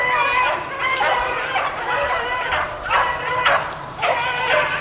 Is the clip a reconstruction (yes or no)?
yes